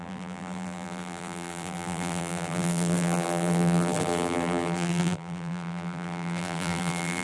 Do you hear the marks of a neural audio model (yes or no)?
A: yes